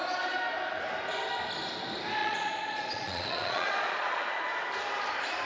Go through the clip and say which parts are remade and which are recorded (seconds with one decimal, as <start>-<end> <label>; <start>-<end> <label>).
0.0-2.2 recorded; 2.2-4.4 remade; 4.4-5.5 recorded